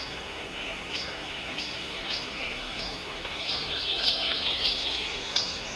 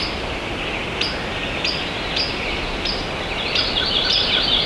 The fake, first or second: first